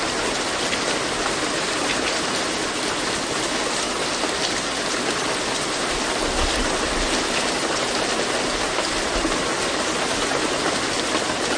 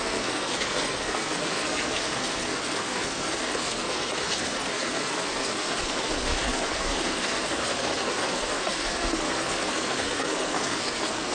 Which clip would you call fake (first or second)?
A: second